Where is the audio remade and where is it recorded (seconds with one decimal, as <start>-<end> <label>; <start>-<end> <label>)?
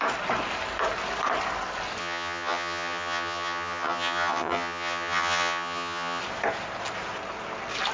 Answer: 0.0-2.0 recorded; 2.0-6.2 remade; 6.2-7.9 recorded